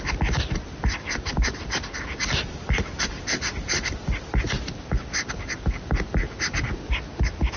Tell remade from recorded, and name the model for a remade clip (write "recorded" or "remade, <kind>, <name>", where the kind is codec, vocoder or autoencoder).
recorded